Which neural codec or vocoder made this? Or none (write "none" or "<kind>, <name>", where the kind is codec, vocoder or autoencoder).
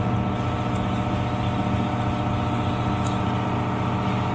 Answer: none